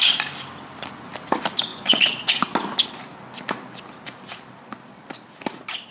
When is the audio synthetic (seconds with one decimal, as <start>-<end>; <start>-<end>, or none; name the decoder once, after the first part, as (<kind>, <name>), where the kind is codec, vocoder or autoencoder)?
1.7-2.3 (vocoder, Vocos)